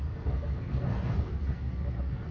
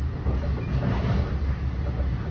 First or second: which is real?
second